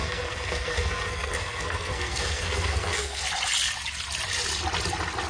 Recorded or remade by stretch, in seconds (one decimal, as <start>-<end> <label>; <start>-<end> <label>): 0.0-3.2 remade; 3.2-5.3 recorded